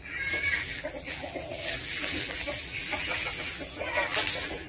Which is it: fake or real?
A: fake